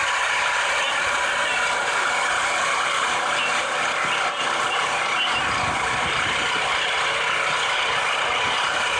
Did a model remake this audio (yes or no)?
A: no